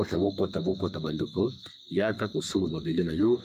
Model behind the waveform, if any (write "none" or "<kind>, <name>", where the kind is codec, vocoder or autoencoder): codec, SNAC